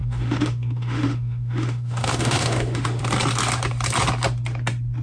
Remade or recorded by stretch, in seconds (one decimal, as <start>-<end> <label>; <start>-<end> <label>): 0.0-3.0 remade; 3.0-5.0 recorded